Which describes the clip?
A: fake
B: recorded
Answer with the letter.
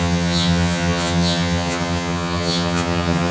A